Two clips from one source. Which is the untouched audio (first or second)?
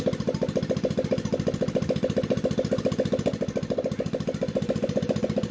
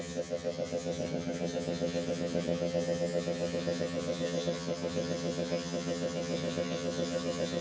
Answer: first